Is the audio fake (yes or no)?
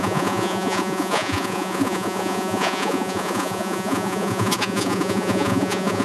yes